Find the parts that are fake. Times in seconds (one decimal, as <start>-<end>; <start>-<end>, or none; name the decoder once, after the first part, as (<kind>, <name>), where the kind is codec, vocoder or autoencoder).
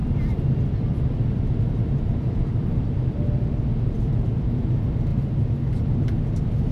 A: 0.0-4.0 (vocoder, BigVGAN v2)